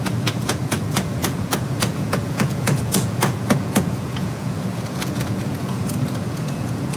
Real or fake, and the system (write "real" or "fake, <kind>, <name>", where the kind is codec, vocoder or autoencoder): fake, vocoder, Vocos